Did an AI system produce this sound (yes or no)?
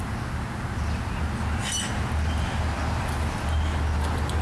no